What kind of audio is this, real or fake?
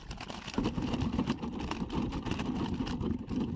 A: real